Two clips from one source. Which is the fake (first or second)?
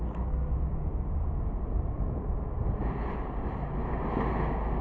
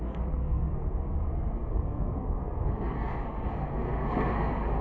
second